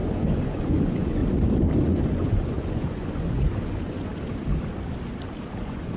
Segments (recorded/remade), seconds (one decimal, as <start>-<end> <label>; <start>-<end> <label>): 0.0-1.2 remade; 1.2-1.8 recorded; 1.8-4.1 remade; 4.1-5.6 recorded; 5.6-6.0 remade